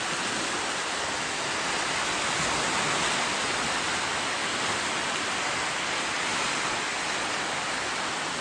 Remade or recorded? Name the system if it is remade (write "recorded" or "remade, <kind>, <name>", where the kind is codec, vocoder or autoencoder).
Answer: recorded